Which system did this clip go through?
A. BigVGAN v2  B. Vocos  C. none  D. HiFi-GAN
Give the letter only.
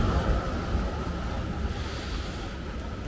C